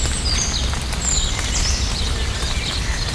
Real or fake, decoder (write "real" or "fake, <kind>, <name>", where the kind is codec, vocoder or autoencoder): real